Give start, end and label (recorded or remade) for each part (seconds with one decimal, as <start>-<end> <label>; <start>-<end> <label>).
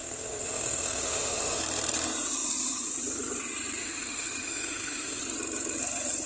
0.0-1.6 remade; 1.6-3.8 recorded; 3.8-5.2 remade; 5.2-6.3 recorded